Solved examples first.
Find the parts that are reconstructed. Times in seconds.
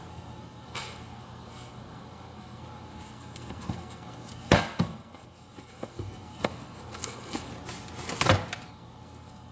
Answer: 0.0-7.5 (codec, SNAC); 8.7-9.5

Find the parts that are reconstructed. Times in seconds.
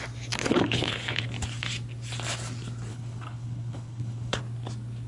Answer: 0.4-1.2 (codec, HILCodec); 2.9-4.4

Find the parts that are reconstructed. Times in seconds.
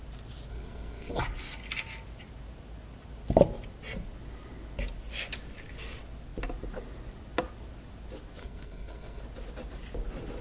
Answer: 0.5-1.2 (codec, SNAC); 8.4-9.2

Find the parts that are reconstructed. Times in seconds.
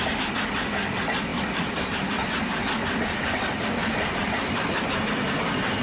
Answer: none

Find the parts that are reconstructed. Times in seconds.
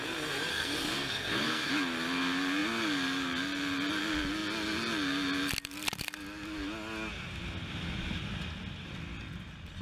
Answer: 0.5-1.7 (codec, SNAC)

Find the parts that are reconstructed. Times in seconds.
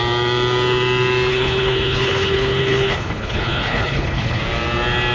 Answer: 1.3-4.4 (codec, HILCodec)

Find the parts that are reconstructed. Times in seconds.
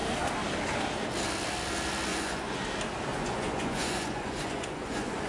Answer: 2.1-2.6 (vocoder, Vocos); 3.1-5.3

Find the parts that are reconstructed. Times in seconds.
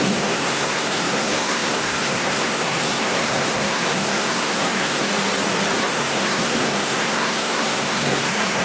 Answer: 0.0-5.1 (codec, SNAC); 5.8-8.6